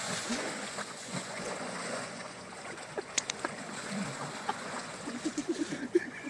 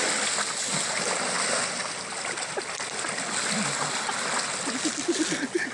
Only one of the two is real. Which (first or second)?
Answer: second